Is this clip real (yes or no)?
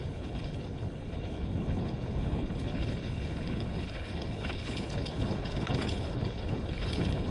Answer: no